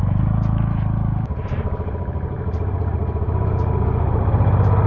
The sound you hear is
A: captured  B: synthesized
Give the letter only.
A